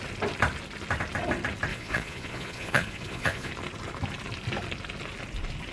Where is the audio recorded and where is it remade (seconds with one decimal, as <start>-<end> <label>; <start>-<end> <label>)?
0.0-1.7 recorded; 1.7-3.5 remade; 3.5-5.7 recorded